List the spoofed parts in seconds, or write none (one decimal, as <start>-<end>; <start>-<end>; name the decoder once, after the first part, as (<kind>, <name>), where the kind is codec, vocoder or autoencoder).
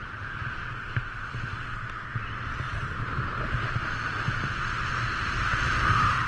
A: 2.1-6.3 (vocoder, BigVGAN v2)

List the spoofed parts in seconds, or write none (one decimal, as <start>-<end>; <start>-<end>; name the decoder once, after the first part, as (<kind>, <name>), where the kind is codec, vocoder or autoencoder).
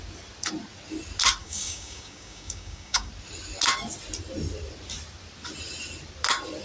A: 1.4-3.1 (codec, DAC)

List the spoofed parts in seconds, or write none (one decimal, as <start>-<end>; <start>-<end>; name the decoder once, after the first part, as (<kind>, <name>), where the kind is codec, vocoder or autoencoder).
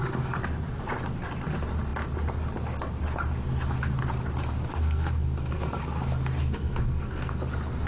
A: 4.7-5.8 (codec, SNAC); 6.4-7.4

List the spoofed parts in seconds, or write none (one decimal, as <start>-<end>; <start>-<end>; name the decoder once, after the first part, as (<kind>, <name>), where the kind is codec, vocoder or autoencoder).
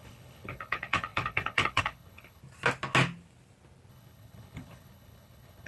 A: 0.0-2.4 (codec, HILCodec); 3.9-5.7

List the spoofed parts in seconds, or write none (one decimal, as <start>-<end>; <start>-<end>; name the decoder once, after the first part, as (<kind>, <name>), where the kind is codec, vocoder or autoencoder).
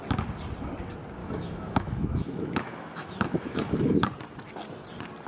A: 1.2-4.1 (autoencoder, DAC-VAE)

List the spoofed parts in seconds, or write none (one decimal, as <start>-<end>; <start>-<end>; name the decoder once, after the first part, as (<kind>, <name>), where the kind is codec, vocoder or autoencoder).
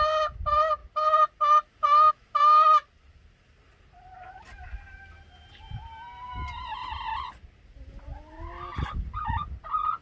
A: none